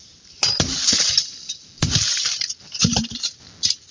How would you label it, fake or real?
fake